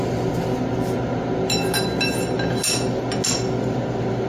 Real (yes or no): yes